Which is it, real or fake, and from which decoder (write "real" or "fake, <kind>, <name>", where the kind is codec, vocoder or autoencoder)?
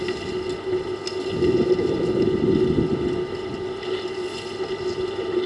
real